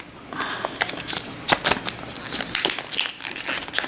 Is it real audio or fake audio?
real